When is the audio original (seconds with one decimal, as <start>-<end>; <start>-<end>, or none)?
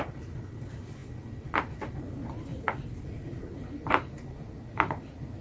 0.0-5.4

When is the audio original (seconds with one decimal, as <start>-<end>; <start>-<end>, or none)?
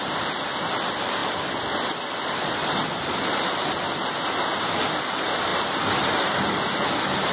0.0-5.5; 6.6-7.3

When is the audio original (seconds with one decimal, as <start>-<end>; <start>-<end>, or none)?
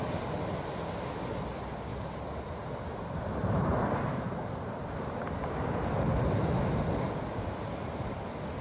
0.0-1.9; 2.7-3.4; 5.2-8.6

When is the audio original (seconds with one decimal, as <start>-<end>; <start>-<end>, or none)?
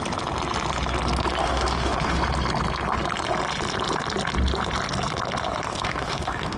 0.0-1.4; 2.2-5.7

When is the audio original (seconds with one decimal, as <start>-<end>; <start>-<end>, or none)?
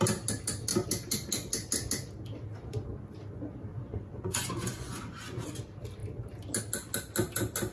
0.0-3.7; 5.4-7.7